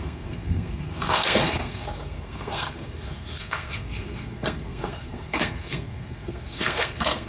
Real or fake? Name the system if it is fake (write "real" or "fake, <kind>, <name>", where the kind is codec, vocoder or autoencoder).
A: fake, codec, SNAC